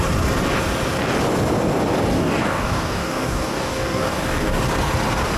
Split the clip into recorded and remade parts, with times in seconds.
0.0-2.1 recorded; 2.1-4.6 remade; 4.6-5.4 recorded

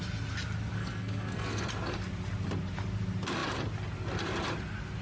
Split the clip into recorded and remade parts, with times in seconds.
0.0-0.7 recorded; 0.7-1.7 remade; 1.7-5.0 recorded

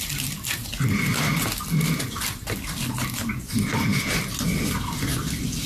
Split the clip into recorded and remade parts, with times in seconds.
0.0-5.7 recorded